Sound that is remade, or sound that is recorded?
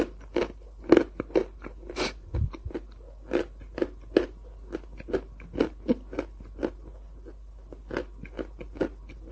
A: recorded